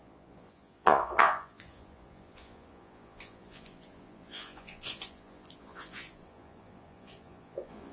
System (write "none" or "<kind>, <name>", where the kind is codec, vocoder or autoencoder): vocoder, Vocos